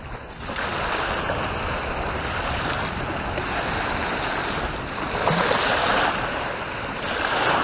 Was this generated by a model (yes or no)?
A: no